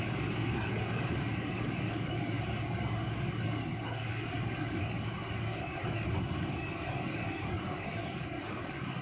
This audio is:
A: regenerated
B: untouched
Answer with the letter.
A